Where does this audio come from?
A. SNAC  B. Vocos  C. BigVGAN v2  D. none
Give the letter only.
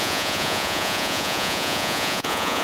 B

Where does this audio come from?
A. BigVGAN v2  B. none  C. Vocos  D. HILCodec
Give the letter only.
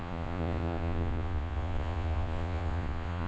C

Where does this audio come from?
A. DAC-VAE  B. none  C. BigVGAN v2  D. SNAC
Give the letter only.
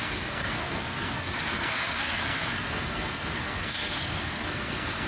D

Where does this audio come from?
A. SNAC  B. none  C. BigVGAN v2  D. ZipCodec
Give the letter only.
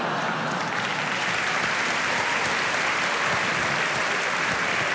B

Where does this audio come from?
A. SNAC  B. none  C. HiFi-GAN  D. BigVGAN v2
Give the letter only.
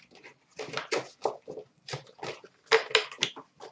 B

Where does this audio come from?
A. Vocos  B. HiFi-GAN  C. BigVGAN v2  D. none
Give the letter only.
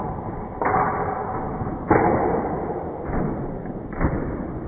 C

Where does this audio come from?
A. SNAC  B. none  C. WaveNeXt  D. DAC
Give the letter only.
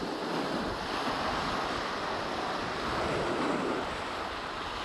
B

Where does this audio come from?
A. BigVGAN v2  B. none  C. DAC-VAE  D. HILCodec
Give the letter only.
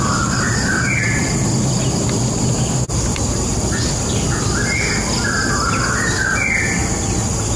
B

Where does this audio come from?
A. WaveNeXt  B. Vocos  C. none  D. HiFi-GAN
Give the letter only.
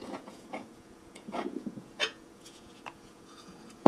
B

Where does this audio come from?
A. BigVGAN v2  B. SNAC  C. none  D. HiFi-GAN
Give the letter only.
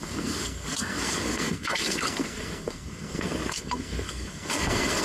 B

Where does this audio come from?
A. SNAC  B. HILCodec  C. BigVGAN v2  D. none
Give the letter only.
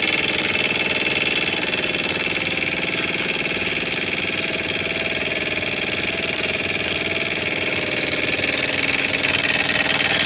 D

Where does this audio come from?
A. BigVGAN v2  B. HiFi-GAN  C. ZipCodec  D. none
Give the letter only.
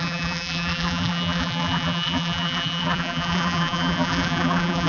A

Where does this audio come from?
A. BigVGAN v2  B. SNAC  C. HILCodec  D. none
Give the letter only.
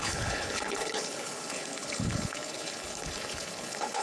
C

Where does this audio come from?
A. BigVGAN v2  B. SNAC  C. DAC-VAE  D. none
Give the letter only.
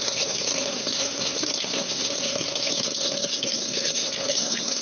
B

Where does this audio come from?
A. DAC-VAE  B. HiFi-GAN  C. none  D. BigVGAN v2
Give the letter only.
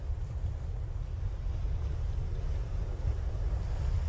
C